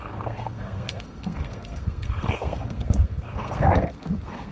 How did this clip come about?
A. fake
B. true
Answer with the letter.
A